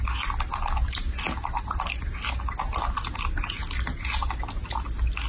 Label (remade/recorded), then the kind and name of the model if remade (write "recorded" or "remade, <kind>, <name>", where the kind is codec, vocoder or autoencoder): recorded